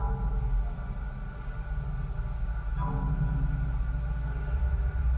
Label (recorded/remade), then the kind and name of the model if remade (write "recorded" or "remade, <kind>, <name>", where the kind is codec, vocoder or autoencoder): recorded